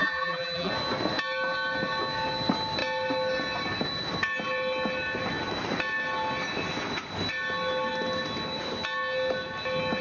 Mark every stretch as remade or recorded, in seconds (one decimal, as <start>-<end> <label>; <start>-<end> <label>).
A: 0.0-0.7 remade; 0.7-10.0 recorded